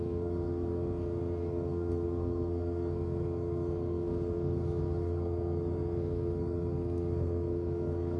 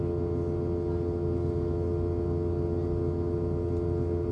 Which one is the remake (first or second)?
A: first